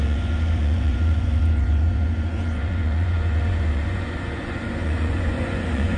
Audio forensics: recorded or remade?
remade